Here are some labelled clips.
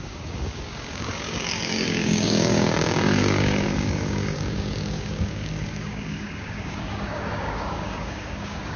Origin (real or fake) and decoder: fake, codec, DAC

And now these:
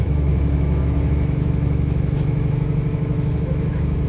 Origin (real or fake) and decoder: fake, autoencoder, DAC-VAE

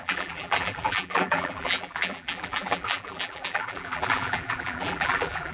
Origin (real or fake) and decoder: fake, vocoder, BigVGAN v2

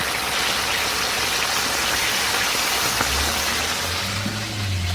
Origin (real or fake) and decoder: real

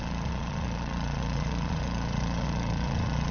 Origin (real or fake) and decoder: fake, vocoder, Vocos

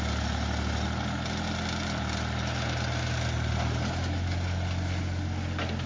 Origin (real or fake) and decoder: real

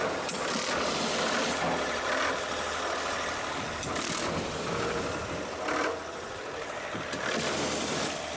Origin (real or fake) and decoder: real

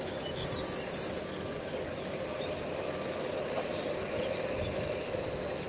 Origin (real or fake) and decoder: real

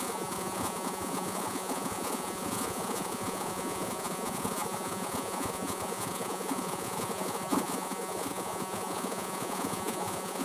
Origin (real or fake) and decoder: fake, vocoder, Vocos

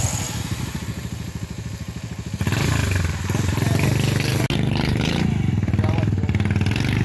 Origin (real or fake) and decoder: real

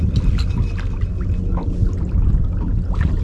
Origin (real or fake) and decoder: real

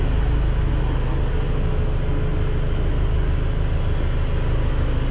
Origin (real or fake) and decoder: real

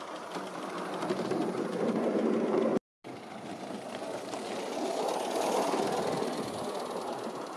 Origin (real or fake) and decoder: real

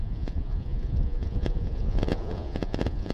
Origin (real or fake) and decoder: fake, vocoder, Vocos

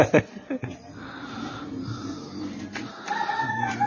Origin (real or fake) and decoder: real